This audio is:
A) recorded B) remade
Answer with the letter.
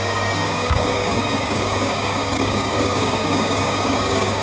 B